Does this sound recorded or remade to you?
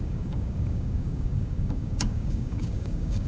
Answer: remade